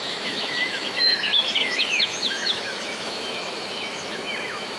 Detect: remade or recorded remade